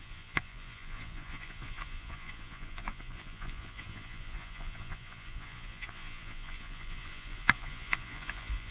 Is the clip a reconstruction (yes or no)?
yes